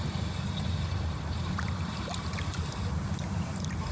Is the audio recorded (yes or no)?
no